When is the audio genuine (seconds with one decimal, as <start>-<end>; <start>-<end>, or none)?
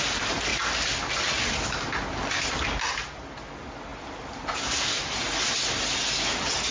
0.0-6.7